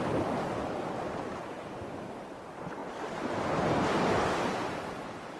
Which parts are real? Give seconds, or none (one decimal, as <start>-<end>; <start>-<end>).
0.0-5.4